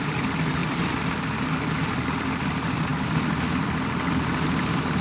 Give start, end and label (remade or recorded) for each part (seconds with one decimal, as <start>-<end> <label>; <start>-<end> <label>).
0.0-5.0 recorded